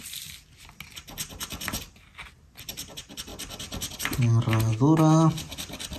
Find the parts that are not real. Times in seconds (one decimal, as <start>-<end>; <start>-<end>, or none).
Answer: 4.7-5.3